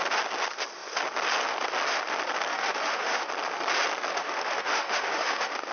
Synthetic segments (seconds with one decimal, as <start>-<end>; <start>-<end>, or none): 2.5-3.3; 4.1-5.7